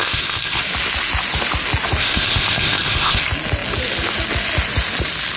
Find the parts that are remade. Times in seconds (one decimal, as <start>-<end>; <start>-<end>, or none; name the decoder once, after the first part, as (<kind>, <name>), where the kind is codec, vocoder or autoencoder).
0.0-0.6 (codec, ZipCodec); 2.0-3.2